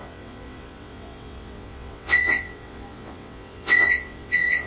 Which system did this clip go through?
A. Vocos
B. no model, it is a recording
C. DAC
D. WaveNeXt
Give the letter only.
D